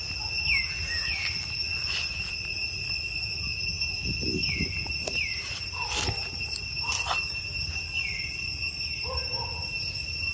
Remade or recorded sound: recorded